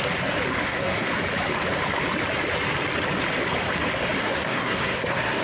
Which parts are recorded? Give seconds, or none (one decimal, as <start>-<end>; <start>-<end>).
0.0-0.6; 1.1-4.2